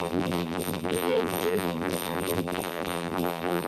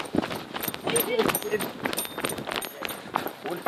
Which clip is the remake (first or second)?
first